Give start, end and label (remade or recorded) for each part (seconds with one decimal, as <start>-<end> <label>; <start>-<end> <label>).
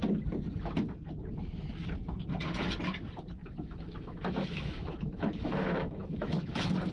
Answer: 0.0-3.4 recorded; 3.4-6.9 remade